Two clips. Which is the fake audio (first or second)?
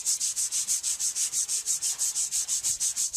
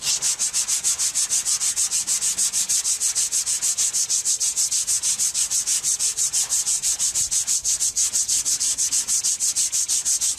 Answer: first